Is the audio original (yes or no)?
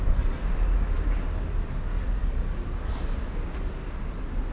yes